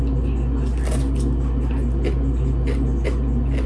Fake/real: real